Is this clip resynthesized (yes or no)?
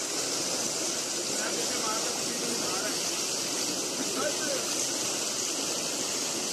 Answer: no